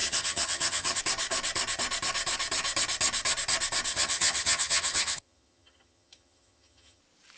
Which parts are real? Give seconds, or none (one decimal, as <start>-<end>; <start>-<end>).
1.0-3.9; 7.0-7.4